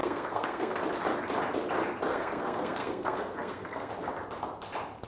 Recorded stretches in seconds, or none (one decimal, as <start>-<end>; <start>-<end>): 0.8-2.1; 3.9-5.1